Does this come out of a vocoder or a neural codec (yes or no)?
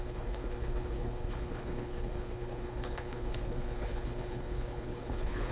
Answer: yes